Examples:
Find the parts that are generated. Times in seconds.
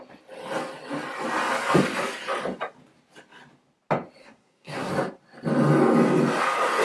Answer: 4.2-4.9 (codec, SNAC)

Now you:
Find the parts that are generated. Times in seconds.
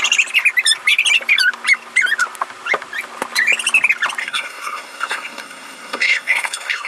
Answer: 4.2-6.9 (codec, SNAC)